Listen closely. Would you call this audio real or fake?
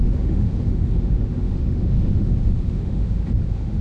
fake